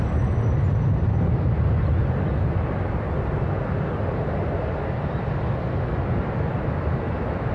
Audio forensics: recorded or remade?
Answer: recorded